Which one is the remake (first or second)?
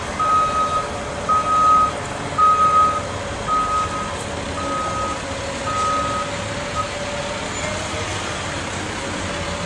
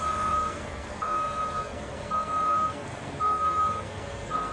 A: second